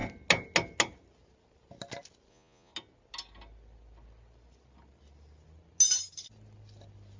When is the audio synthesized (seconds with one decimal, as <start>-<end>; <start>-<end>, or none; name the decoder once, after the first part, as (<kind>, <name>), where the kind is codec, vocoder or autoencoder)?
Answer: 2.3-2.7 (vocoder, Vocos)